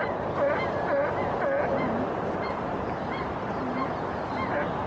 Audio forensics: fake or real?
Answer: real